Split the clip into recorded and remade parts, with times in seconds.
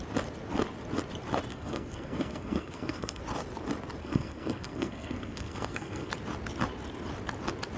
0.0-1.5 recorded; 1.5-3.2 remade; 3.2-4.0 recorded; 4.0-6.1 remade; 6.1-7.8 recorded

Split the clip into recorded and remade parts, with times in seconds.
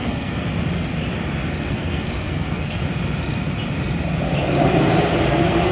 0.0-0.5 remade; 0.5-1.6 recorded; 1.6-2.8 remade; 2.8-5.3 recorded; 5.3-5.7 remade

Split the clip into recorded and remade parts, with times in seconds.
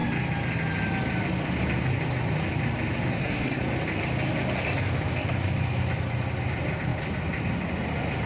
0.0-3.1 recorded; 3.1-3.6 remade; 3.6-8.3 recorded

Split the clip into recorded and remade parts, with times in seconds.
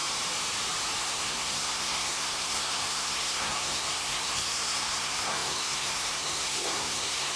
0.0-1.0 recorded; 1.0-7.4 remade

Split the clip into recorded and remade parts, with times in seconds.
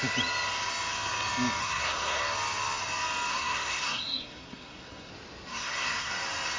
0.0-1.6 recorded; 1.6-2.2 remade; 2.2-3.3 recorded; 3.3-5.1 remade; 5.1-5.5 recorded; 5.5-6.1 remade; 6.1-6.6 recorded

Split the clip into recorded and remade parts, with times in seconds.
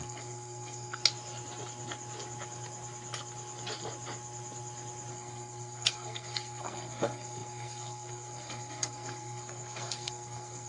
0.0-1.0 remade; 1.0-5.1 recorded; 5.1-10.7 remade